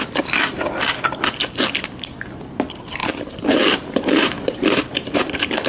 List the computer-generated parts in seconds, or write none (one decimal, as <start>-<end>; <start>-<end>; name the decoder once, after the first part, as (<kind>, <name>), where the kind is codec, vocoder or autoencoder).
3.0-5.2 (vocoder, BigVGAN v2)

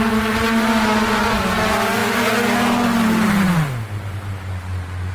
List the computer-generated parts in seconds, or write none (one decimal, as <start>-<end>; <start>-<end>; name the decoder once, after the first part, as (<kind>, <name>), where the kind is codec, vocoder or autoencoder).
none

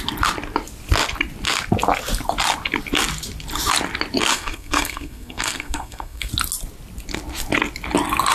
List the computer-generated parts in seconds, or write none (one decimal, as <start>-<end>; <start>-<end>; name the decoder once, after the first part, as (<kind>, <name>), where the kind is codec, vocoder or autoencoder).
4.3-6.3 (codec, SNAC)

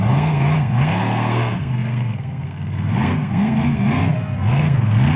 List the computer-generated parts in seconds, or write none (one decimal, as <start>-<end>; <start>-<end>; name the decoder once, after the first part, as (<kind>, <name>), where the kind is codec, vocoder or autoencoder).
0.0-5.2 (codec, SNAC)